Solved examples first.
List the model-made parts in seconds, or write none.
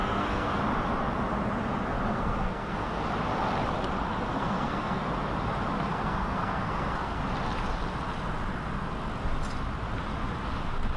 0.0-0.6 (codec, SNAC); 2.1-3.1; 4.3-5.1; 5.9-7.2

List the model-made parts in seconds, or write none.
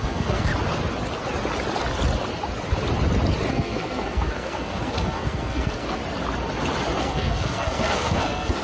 0.0-0.5 (codec, SNAC); 3.5-6.0; 7.0-8.6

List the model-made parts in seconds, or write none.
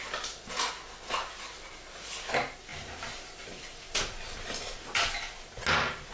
none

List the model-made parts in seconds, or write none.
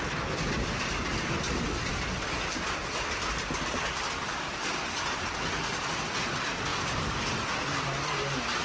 none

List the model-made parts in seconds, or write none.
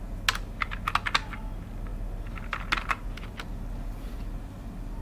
none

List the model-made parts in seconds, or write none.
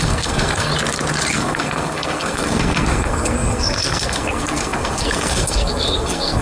0.0-0.7 (codec, SNAC); 1.3-6.4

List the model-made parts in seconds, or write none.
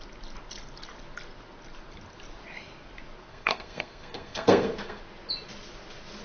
3.3-5.0 (codec, SNAC)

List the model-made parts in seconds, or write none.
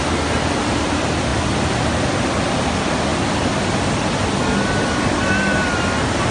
none